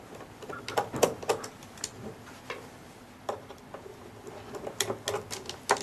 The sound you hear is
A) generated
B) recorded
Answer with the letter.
B